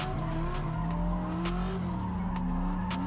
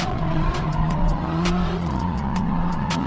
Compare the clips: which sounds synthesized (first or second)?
second